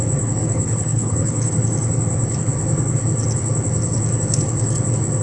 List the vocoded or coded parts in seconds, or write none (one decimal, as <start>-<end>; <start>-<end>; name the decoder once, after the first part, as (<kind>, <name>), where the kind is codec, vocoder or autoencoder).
0.4-1.5 (codec, HILCodec)